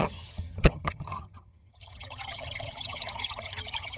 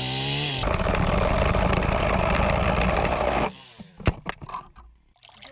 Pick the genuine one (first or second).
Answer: second